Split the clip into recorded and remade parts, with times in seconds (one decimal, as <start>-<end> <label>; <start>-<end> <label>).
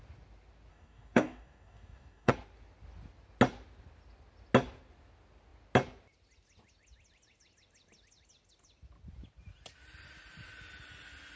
0.0-0.7 recorded; 0.7-2.3 remade; 2.3-11.4 recorded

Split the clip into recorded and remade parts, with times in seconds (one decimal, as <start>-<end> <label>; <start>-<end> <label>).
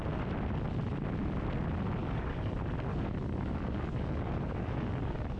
0.0-2.0 recorded; 2.0-2.5 remade; 2.5-2.9 recorded; 2.9-5.4 remade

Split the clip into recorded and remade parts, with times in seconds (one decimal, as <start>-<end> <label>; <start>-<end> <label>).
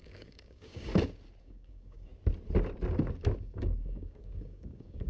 0.0-0.9 remade; 0.9-1.4 recorded; 1.4-2.1 remade; 2.1-3.4 recorded; 3.4-5.1 remade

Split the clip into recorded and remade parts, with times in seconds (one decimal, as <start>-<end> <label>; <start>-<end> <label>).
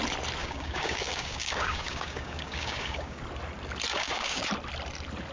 0.0-0.4 recorded; 0.4-3.2 remade; 3.2-3.9 recorded; 3.9-4.5 remade; 4.5-5.3 recorded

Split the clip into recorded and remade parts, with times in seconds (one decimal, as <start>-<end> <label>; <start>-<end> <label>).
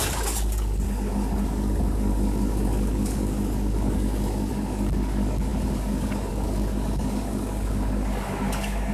0.0-8.9 remade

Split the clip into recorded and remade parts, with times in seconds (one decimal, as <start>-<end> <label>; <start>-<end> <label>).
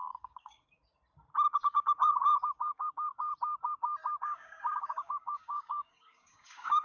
0.0-0.8 remade; 0.8-1.5 recorded; 1.5-3.3 remade; 3.3-4.2 recorded; 4.2-6.8 remade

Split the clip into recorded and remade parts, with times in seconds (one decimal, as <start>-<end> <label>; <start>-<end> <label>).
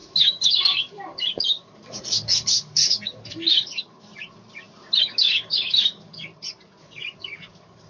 0.0-4.1 remade; 4.1-5.0 recorded; 5.0-6.3 remade; 6.3-6.8 recorded; 6.8-7.9 remade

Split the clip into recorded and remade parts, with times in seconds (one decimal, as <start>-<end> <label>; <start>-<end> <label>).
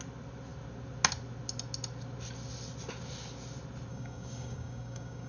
0.0-3.9 recorded; 3.9-5.3 remade